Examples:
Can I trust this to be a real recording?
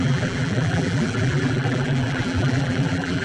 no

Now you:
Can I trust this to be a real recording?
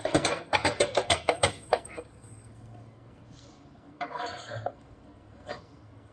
no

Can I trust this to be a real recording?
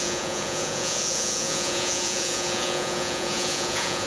no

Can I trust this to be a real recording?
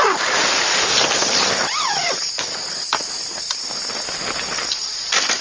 yes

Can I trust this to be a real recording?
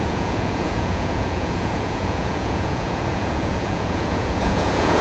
no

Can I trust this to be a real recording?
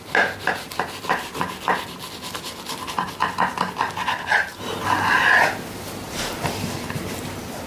yes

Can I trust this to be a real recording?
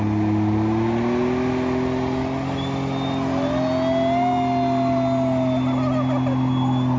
yes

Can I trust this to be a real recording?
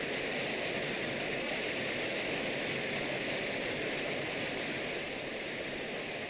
yes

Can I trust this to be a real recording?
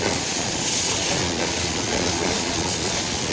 no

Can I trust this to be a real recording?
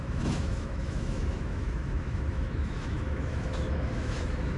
no